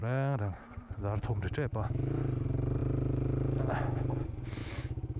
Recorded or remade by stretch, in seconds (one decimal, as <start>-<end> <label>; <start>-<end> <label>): 0.0-1.7 recorded; 1.7-2.2 remade; 2.2-4.6 recorded; 4.6-5.2 remade